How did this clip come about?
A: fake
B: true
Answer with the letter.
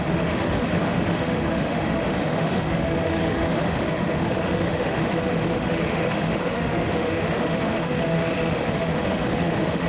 A